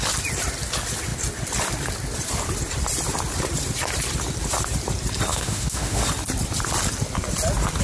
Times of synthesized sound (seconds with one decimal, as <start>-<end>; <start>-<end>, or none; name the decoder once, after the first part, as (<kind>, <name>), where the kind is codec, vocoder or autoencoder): 5.3-6.0 (autoencoder, DAC-VAE)